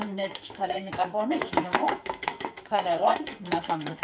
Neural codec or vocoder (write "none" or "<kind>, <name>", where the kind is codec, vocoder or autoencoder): codec, SNAC